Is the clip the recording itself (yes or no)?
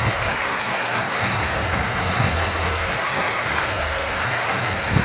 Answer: no